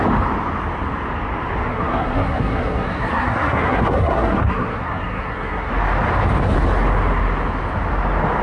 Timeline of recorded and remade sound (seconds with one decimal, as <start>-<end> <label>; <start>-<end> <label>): 0.0-1.7 recorded; 1.7-5.7 remade; 5.7-8.4 recorded